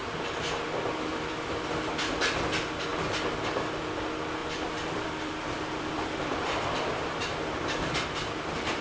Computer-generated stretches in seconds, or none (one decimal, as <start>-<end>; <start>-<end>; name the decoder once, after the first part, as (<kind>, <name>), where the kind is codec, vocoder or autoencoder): 1.1-1.7 (vocoder, BigVGAN v2); 4.4-7.2